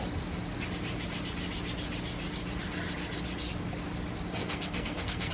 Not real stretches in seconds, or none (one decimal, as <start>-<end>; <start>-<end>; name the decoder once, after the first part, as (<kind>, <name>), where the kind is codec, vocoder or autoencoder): 4.4-5.3 (codec, SNAC)